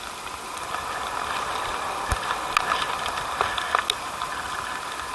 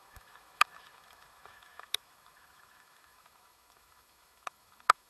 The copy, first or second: second